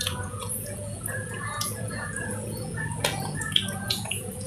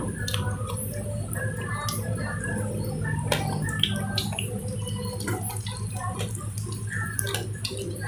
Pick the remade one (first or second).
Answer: first